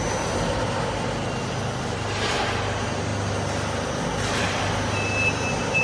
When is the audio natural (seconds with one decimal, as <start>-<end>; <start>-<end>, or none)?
0.0-5.8